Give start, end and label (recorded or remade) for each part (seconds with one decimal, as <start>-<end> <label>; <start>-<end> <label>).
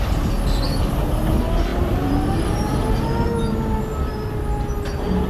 0.0-1.7 recorded; 1.7-3.0 remade; 3.0-5.3 recorded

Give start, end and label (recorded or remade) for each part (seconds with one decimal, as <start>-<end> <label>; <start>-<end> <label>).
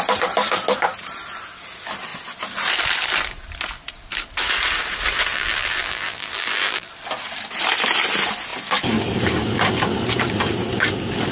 0.0-5.3 recorded; 5.3-6.9 remade; 6.9-11.3 recorded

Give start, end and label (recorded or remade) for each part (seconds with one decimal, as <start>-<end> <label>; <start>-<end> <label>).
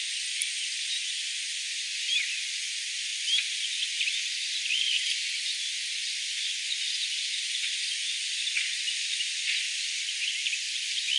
0.0-3.1 recorded; 3.1-6.4 remade; 6.4-11.2 recorded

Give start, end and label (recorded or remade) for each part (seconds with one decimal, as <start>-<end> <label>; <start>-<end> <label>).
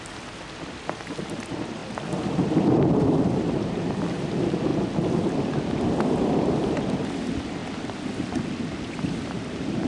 0.0-4.7 remade; 4.7-5.8 recorded; 5.8-7.6 remade; 7.6-8.8 recorded; 8.8-9.9 remade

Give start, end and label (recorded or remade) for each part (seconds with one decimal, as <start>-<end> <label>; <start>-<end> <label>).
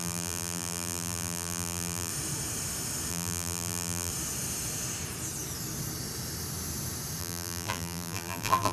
0.0-2.1 remade; 2.1-3.1 recorded; 3.1-4.1 remade; 4.1-7.2 recorded; 7.2-8.7 remade